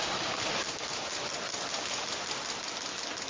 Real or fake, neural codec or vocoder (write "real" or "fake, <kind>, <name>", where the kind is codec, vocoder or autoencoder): real